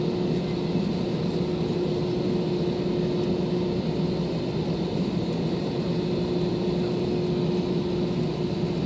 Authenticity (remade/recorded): recorded